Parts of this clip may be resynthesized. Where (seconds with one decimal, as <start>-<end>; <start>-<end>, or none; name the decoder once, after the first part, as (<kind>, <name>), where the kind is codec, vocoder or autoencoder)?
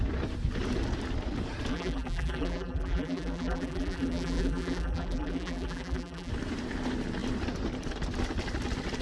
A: 1.7-6.3 (vocoder, BigVGAN v2)